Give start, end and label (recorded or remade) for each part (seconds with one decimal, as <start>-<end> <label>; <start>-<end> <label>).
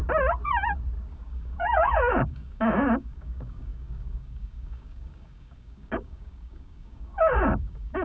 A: 0.0-1.1 recorded; 1.1-8.0 remade